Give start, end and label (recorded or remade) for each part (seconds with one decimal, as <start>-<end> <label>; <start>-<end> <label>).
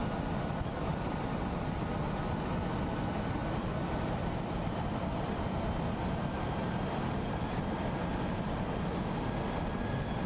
0.0-3.4 recorded; 3.4-7.0 remade; 7.0-10.3 recorded